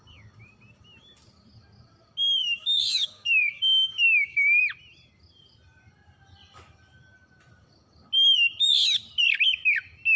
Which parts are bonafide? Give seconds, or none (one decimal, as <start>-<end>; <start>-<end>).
0.0-2.4; 4.6-10.2